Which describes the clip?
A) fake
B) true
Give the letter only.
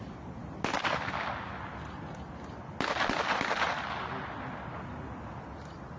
B